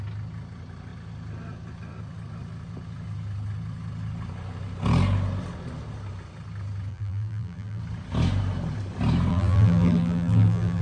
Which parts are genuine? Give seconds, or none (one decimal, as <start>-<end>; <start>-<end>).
0.0-6.9; 7.8-9.3